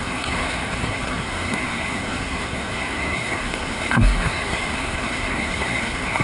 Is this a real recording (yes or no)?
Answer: no